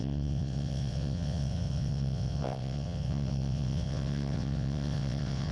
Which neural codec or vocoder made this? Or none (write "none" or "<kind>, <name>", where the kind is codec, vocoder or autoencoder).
vocoder, WaveNeXt